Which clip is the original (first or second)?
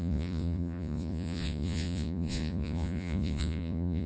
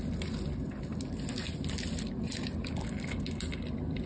second